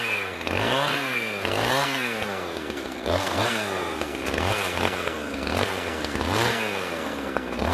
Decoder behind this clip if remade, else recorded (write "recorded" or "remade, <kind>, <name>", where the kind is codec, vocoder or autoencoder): remade, codec, SNAC